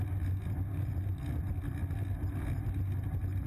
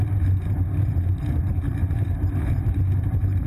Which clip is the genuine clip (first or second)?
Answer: first